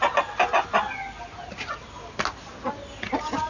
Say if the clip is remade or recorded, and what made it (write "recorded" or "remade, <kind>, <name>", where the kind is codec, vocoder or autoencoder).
recorded